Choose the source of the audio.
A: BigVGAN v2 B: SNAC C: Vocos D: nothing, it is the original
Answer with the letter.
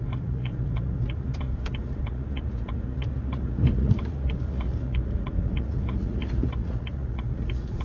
C